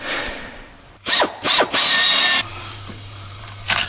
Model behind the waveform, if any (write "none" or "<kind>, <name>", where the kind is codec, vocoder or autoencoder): vocoder, BigVGAN v2